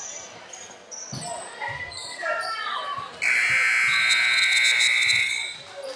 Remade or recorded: recorded